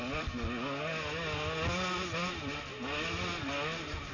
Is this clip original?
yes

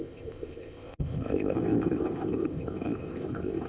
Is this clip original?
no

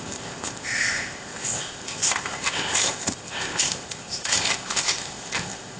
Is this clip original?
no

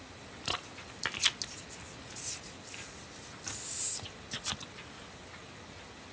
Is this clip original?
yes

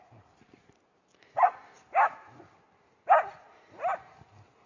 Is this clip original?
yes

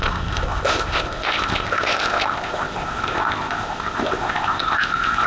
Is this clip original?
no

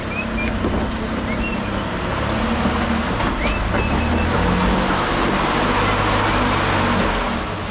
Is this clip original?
yes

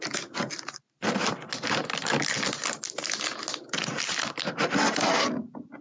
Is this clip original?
yes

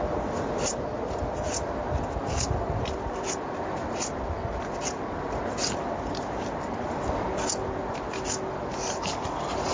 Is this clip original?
yes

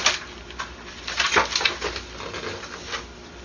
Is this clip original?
yes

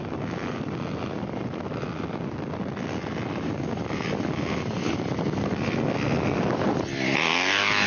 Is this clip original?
yes